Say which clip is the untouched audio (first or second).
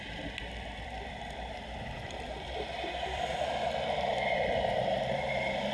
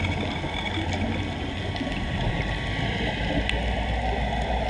second